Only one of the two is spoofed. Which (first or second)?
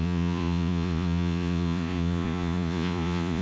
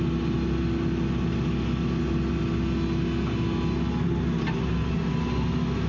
first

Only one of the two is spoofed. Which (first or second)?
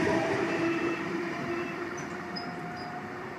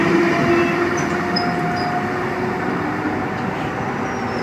first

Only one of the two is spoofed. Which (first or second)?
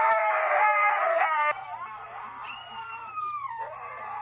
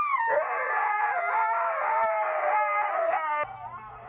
first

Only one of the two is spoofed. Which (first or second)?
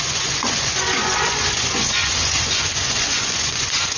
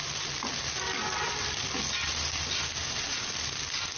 first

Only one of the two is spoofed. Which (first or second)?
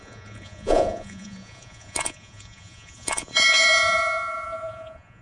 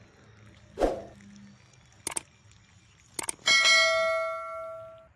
first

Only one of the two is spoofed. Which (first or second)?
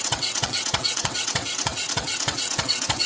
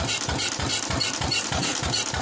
first